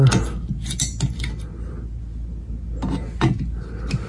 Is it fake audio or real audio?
real